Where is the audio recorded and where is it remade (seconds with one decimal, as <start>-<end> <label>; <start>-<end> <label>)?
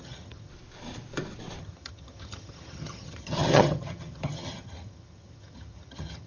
0.0-0.5 remade; 0.5-1.6 recorded; 1.6-6.3 remade